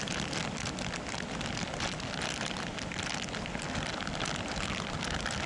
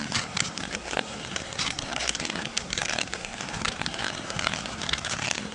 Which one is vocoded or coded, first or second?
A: second